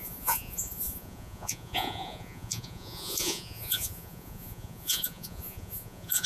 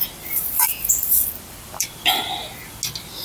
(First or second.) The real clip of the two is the second